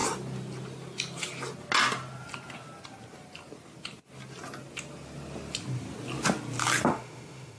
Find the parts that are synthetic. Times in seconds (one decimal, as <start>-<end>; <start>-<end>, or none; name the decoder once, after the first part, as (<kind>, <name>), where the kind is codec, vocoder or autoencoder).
6.9-7.6 (autoencoder, DAC-VAE)